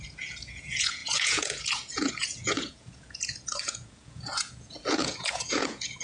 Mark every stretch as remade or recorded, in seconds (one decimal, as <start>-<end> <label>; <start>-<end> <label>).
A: 0.0-6.0 remade